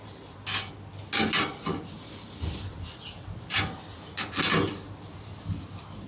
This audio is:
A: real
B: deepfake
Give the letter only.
A